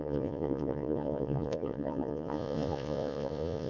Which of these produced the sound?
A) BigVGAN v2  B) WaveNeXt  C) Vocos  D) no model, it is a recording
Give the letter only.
C